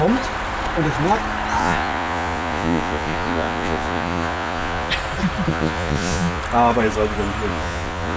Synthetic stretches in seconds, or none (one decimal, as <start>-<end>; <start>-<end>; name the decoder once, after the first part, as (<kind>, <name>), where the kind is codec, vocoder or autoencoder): 1.6-4.9 (vocoder, Vocos); 5.5-6.4; 7.5-8.2